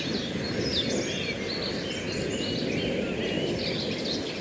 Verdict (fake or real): real